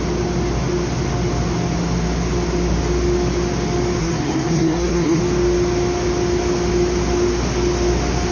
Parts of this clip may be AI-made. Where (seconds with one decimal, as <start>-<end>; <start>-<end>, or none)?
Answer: 4.0-5.2